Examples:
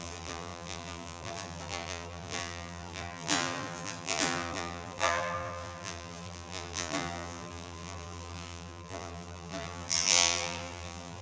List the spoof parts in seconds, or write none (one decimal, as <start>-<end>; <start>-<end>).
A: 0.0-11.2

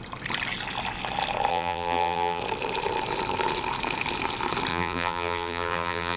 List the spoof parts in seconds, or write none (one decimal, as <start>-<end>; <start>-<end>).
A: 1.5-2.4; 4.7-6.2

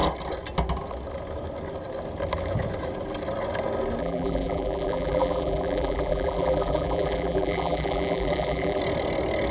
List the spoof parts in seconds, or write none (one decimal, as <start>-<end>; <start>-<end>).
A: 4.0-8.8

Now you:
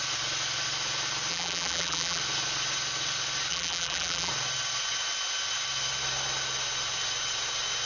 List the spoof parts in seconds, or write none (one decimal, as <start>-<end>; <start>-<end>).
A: 1.3-2.2; 3.5-4.3

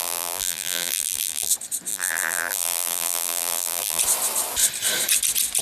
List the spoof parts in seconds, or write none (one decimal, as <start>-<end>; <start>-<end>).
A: 0.0-1.5; 1.9-4.0

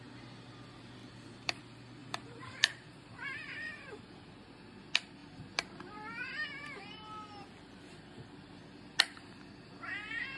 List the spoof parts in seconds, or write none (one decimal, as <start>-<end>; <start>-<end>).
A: 1.0-1.6; 2.0-3.9